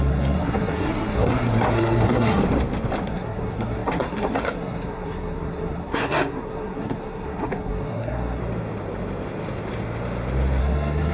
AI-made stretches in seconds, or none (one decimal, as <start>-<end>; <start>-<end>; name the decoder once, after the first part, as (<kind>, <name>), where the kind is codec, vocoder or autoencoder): 0.0-2.4 (codec, SNAC); 3.0-8.4; 10.6-11.1

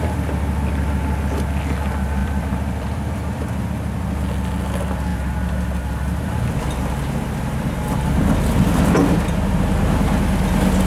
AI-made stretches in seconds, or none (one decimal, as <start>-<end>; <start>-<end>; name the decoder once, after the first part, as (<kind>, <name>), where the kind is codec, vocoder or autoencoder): 2.2-4.2 (vocoder, BigVGAN v2)